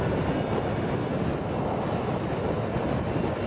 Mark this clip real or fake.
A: real